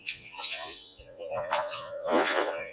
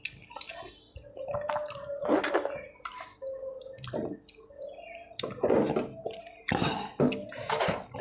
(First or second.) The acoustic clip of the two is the second